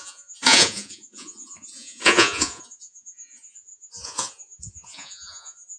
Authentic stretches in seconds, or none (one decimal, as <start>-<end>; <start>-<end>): none